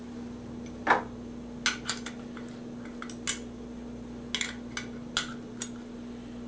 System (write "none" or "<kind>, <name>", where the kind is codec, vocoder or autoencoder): none